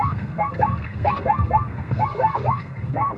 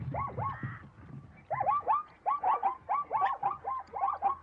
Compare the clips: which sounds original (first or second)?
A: second